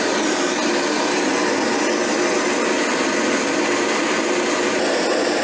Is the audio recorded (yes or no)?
yes